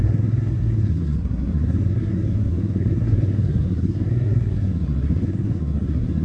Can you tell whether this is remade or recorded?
remade